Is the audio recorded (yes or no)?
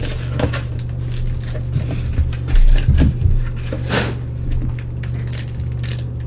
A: yes